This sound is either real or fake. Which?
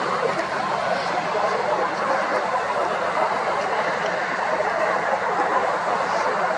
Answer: real